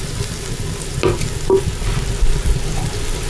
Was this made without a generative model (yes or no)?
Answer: yes